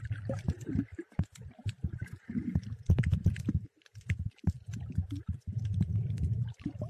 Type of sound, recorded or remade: remade